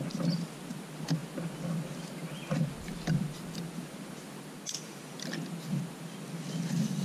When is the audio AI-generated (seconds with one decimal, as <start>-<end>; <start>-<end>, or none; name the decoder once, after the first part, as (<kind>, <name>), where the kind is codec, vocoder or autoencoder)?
none